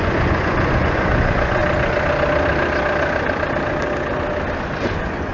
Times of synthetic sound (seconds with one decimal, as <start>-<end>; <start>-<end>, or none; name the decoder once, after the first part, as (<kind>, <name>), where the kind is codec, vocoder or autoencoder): 0.0-1.6 (vocoder, Vocos); 4.8-5.3